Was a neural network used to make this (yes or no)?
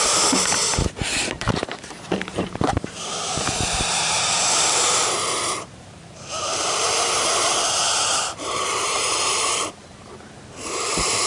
yes